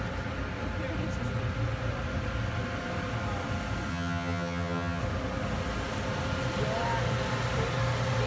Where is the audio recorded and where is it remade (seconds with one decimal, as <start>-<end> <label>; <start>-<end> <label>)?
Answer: 0.0-3.9 recorded; 3.9-5.0 remade; 5.0-8.3 recorded